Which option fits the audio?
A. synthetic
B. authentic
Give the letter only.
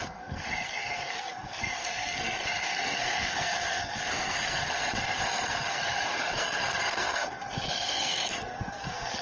A